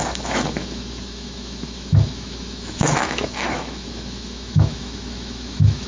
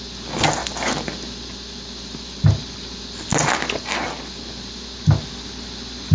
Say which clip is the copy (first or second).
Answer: first